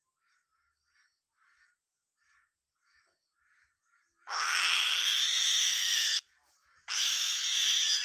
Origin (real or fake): fake